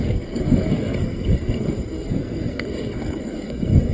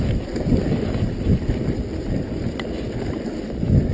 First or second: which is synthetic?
first